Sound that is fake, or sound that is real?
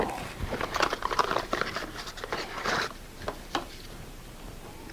fake